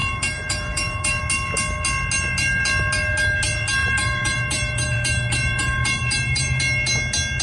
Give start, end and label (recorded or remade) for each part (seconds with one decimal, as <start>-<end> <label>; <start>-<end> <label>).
0.0-1.2 remade; 1.2-3.8 recorded; 3.8-6.6 remade; 6.6-7.4 recorded